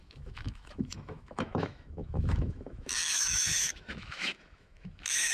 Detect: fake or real fake